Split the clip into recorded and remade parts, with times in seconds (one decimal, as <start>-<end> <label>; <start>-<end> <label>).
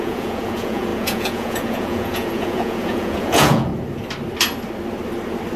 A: 0.0-3.7 remade; 3.7-5.6 recorded